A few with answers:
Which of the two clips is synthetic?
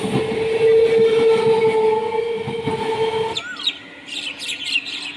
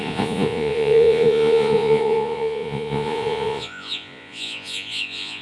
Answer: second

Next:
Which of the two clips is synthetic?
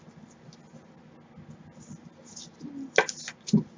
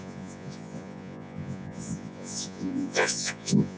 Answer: second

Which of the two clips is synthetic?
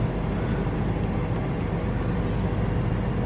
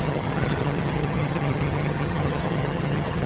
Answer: second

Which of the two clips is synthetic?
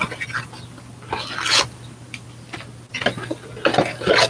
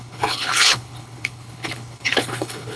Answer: second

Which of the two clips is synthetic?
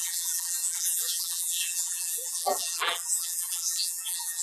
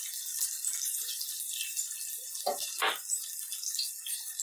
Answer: first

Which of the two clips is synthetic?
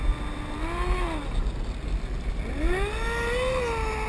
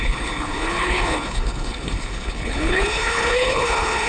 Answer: second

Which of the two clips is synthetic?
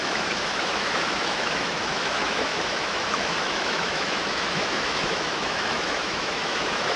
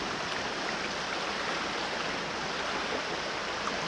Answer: first